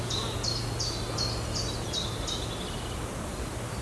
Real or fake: real